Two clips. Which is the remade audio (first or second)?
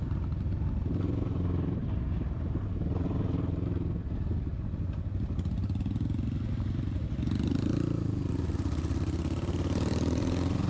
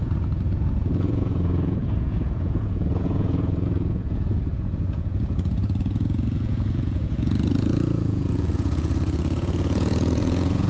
second